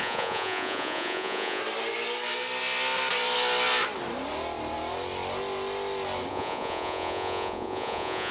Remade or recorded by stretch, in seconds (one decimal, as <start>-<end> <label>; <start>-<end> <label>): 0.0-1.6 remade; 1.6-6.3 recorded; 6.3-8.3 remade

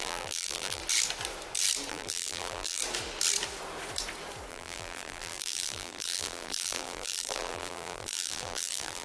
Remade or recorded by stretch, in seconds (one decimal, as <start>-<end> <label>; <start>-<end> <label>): 0.0-0.8 remade; 0.8-1.9 recorded; 1.9-2.8 remade; 2.8-4.5 recorded; 4.5-9.0 remade

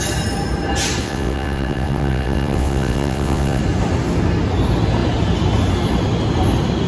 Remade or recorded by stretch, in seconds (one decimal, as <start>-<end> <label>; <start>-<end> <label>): 0.0-1.0 recorded; 1.0-3.6 remade; 3.6-6.9 recorded

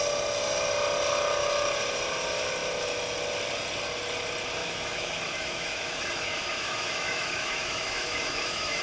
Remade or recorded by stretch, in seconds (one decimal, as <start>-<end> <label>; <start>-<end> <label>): 0.0-4.6 recorded; 4.6-8.8 remade

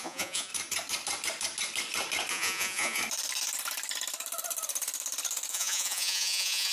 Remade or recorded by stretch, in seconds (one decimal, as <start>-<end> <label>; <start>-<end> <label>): 0.0-0.5 remade; 0.5-2.3 recorded; 2.3-3.0 remade; 3.0-5.5 recorded; 5.5-6.7 remade

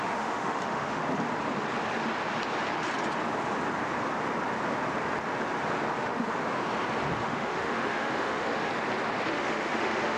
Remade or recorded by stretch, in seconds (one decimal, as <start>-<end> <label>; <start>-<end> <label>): 0.0-1.0 remade; 1.0-6.0 recorded; 6.0-6.4 remade; 6.4-7.2 recorded; 7.2-8.7 remade; 8.7-9.3 recorded; 9.3-10.2 remade

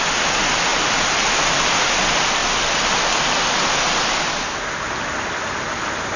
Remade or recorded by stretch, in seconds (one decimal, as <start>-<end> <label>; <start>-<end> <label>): 0.0-6.2 recorded